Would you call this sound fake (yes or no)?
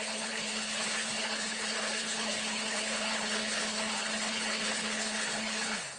yes